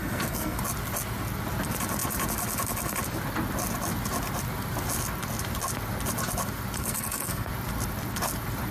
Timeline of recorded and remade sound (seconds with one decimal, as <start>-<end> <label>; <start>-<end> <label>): 0.0-0.6 remade; 0.6-6.8 recorded; 6.8-7.5 remade; 7.5-8.7 recorded